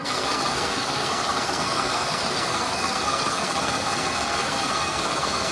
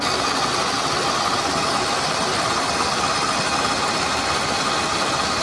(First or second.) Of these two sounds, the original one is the second